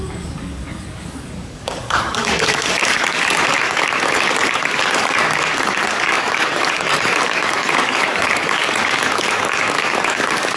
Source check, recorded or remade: remade